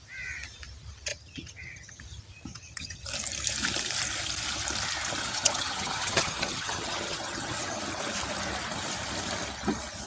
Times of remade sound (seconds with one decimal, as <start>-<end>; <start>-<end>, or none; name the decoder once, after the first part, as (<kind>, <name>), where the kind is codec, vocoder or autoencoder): 1.1-2.0 (vocoder, HiFi-GAN); 2.5-3.0; 5.2-7.8